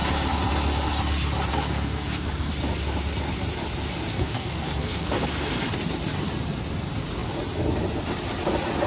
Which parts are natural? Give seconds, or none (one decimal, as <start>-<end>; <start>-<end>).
0.0-1.5; 2.5-4.1; 5.6-8.9

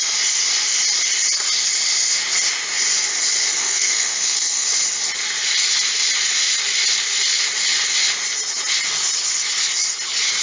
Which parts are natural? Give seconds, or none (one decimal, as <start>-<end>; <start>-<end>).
0.0-3.6; 4.7-10.4